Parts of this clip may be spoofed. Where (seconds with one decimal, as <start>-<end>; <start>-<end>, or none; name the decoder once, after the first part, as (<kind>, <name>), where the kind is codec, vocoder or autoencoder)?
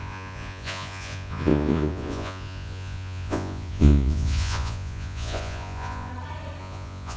0.0-6.1 (vocoder, Vocos); 6.6-7.2